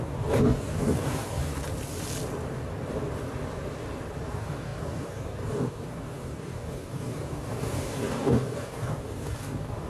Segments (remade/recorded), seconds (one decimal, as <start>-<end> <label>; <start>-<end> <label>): 0.0-1.5 remade; 1.5-4.3 recorded; 4.3-9.9 remade